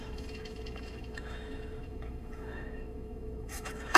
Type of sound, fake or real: fake